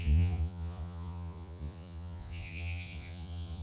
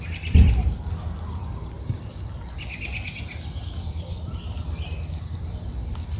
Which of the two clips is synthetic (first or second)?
first